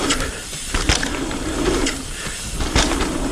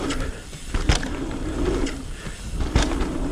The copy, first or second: first